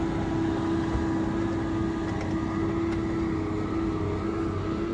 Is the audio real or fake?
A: real